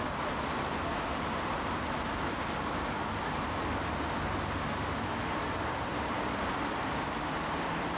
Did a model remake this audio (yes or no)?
no